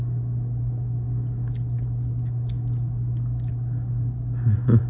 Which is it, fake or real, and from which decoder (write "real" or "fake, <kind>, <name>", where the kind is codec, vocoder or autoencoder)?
real